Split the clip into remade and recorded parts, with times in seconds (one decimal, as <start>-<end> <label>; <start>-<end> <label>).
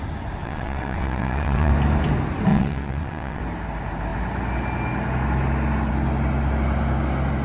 0.0-0.4 recorded; 0.4-1.7 remade; 1.7-2.5 recorded; 2.5-3.4 remade; 3.4-7.4 recorded